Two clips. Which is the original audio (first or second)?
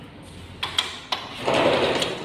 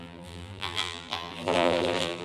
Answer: first